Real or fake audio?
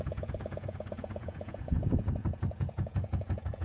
fake